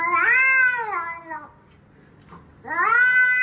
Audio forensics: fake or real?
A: real